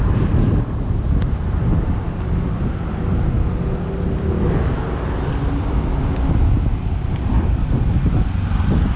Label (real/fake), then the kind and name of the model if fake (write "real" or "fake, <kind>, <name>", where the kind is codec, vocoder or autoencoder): real